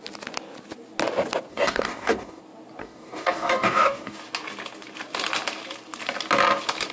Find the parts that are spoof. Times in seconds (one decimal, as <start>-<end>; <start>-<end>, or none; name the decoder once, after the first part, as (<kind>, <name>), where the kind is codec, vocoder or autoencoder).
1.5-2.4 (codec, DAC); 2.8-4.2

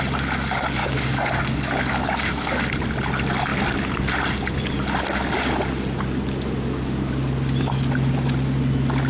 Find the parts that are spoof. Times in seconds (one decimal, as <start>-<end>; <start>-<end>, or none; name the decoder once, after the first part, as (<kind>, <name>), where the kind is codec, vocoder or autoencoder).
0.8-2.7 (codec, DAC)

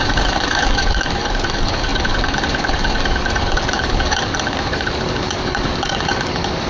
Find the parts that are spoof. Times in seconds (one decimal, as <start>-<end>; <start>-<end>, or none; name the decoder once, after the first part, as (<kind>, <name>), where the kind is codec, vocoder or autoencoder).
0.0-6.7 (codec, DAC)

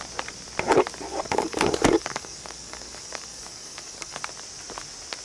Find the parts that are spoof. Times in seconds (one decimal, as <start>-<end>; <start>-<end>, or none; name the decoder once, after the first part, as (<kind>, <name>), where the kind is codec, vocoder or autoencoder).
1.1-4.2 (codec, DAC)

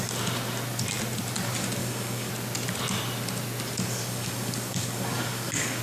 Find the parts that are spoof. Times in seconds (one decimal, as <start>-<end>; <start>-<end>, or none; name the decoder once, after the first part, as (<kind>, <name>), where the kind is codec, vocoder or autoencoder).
1.8-2.3 (codec, DAC); 3.9-5.8

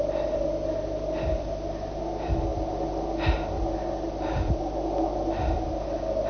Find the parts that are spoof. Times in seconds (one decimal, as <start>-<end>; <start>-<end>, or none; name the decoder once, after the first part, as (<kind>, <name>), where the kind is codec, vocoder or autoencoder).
none

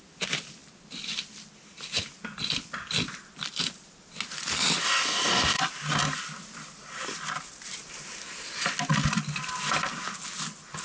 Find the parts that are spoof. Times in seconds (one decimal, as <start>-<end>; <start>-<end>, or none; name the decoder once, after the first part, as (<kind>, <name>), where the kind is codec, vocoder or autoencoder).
4.8-5.6 (codec, DAC)

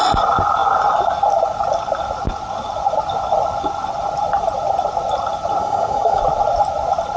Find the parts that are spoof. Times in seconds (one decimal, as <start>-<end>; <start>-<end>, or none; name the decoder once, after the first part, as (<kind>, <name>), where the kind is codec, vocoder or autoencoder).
5.6-6.2 (codec, DAC)